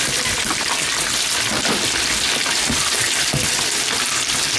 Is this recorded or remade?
remade